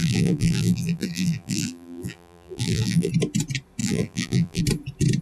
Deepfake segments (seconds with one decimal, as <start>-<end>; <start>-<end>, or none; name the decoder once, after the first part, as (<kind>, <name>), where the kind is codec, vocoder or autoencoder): 0.0-3.1 (vocoder, BigVGAN v2); 3.8-4.6